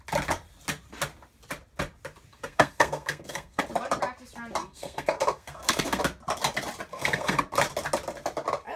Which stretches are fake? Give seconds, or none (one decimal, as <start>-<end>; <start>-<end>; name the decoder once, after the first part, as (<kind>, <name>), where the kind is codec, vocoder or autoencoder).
2.3-3.6 (codec, SNAC); 4.6-6.0; 6.9-7.4